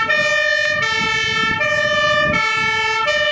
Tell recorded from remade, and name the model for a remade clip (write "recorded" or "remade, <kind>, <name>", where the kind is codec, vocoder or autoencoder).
recorded